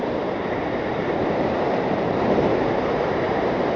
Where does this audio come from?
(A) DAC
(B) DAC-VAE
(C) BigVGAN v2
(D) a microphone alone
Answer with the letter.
C